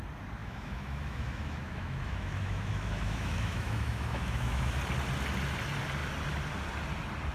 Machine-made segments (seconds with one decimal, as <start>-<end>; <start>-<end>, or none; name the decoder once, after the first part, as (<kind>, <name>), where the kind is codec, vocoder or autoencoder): 0.4-4.8 (autoencoder, DAC-VAE)